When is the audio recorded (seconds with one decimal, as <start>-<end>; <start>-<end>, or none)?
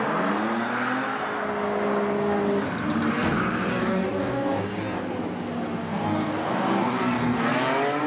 0.0-3.7; 5.0-5.8; 7.4-8.1